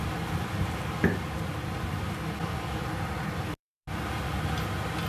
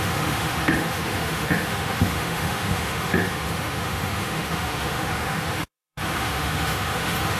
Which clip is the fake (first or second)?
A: second